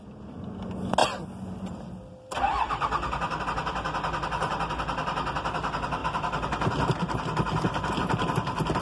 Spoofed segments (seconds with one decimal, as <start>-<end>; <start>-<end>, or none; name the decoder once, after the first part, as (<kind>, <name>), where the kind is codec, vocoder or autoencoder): none